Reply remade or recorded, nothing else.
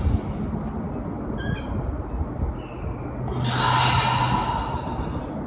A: recorded